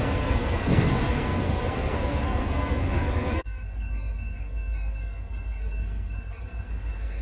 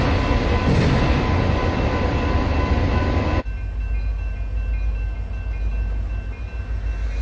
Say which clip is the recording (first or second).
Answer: second